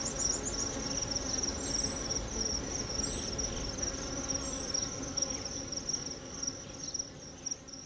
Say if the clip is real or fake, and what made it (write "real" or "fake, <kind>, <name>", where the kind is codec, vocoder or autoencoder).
real